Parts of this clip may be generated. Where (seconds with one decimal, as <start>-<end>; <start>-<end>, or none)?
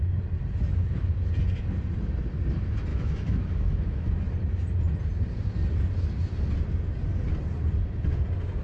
2.9-4.1